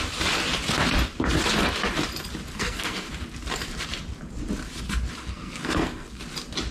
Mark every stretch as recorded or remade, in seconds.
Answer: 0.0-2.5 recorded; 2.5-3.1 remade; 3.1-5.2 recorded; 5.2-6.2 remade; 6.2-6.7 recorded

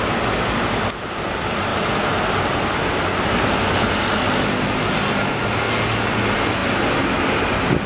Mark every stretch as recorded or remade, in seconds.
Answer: 0.0-7.9 recorded

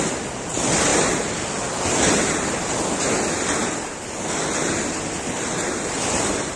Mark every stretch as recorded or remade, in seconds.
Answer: 0.0-6.6 recorded

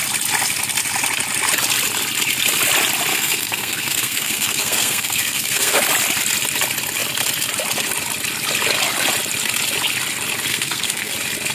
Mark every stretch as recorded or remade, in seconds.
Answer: 0.0-3.1 recorded; 3.1-5.8 remade; 5.8-10.5 recorded; 10.5-11.1 remade; 11.1-11.5 recorded

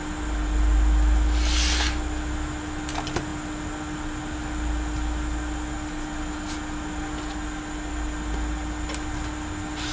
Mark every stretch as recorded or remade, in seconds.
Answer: 0.0-9.9 recorded

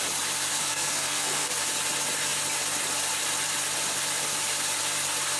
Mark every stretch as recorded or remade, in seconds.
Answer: 0.0-0.5 recorded; 0.5-1.5 remade; 1.5-5.4 recorded

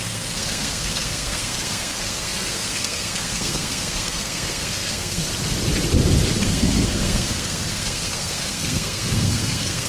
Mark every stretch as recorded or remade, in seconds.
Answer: 0.0-5.3 remade; 5.3-6.4 recorded; 6.4-9.9 remade

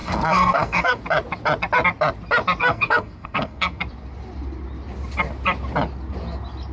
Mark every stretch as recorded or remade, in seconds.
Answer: 0.0-1.0 remade; 1.0-2.6 recorded; 2.6-3.8 remade; 3.8-6.7 recorded